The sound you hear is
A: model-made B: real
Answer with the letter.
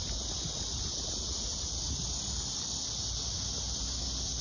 B